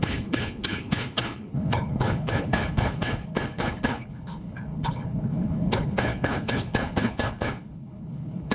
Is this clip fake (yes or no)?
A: yes